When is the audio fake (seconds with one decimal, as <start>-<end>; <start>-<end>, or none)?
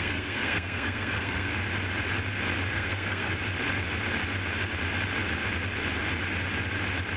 0.0-1.5; 2.7-3.3